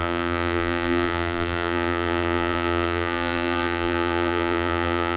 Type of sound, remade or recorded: remade